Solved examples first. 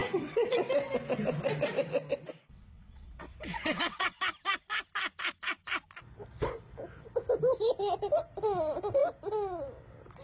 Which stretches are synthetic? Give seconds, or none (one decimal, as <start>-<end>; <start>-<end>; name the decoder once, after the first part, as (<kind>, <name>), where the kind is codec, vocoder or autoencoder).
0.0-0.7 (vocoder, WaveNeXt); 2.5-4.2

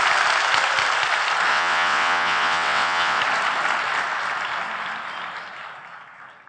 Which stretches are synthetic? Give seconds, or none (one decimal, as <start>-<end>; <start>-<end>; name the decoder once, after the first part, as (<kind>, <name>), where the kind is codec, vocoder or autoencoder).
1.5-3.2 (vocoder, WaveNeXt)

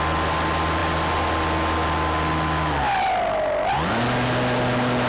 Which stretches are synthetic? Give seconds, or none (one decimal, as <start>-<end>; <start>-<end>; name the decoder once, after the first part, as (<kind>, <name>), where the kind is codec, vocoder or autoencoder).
none

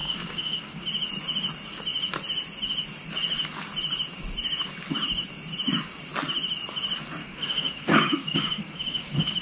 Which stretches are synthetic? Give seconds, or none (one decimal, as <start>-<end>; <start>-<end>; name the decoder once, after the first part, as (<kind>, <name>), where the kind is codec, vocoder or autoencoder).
0.0-0.8 (codec, DAC); 7.2-9.4

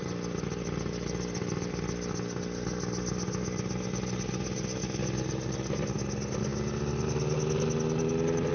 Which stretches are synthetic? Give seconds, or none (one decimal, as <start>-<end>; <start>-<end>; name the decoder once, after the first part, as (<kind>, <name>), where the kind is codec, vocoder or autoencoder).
none